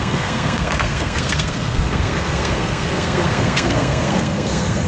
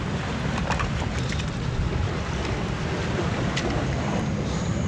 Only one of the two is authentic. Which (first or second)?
second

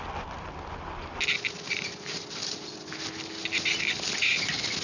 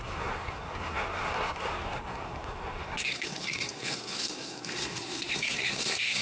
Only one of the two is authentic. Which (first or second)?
first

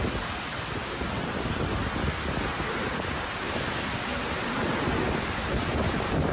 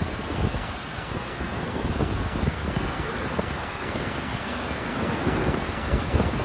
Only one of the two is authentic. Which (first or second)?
first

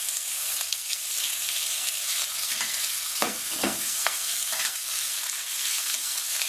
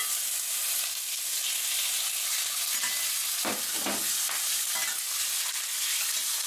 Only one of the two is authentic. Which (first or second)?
second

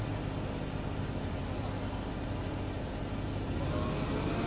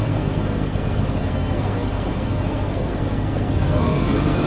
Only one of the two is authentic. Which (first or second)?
first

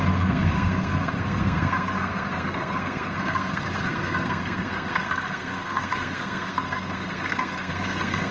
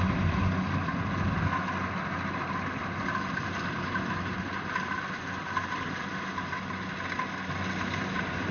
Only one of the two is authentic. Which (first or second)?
second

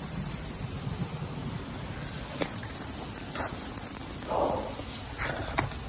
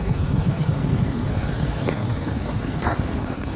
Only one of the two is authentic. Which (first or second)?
first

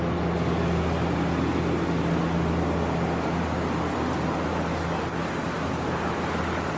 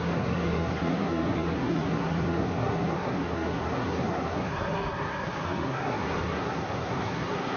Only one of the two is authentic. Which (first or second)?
first